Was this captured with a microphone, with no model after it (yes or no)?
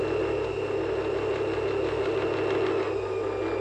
yes